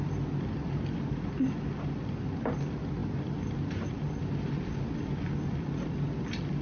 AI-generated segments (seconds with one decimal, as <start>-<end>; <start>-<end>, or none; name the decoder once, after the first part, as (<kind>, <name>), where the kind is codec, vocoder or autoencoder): none